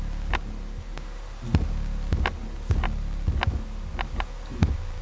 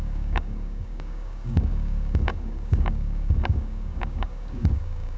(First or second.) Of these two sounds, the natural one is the first